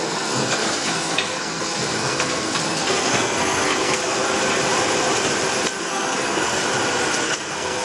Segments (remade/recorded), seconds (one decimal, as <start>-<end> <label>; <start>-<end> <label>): 0.0-4.0 remade; 4.0-5.8 recorded; 5.8-6.6 remade; 6.6-7.2 recorded; 7.2-7.8 remade